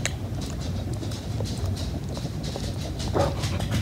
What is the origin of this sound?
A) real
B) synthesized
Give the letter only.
A